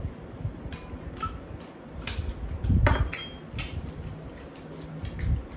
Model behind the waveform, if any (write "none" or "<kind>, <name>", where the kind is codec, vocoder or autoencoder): none